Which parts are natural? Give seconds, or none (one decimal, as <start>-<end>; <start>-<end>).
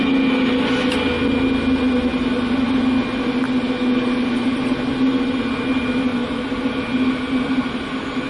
0.0-8.3